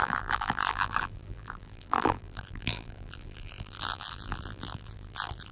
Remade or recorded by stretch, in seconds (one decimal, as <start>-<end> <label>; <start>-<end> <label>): 0.0-5.5 remade